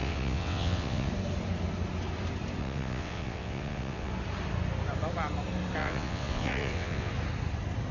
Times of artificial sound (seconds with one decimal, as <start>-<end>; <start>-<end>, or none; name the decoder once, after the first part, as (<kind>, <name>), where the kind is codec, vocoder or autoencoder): 0.0-1.1 (vocoder, WaveNeXt); 2.6-4.1; 5.8-7.1

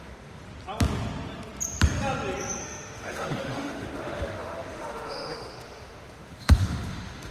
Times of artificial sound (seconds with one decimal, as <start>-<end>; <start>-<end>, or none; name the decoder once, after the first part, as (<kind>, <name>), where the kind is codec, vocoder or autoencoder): 0.0-0.4 (autoencoder, DAC-VAE); 2.6-7.3

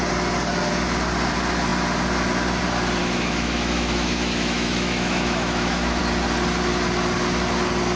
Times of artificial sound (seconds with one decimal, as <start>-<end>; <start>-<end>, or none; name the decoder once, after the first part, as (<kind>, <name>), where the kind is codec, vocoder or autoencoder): 3.0-6.0 (autoencoder, DAC-VAE)

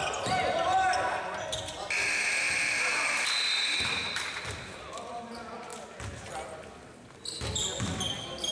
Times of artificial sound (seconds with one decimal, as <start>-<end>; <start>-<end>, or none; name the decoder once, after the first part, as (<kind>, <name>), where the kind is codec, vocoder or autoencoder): 2.6-5.7 (vocoder, BigVGAN v2)

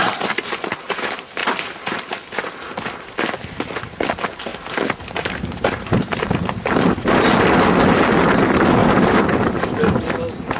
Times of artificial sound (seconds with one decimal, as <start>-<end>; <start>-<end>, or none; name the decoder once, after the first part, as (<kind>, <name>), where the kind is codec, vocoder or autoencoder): 4.5-6.3 (vocoder, BigVGAN v2); 8.8-9.6

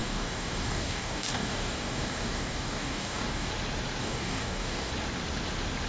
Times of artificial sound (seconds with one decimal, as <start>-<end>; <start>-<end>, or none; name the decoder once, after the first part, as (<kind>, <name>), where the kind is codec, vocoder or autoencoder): 0.0-3.5 (codec, DAC); 4.0-4.9